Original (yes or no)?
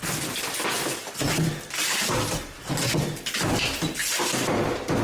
yes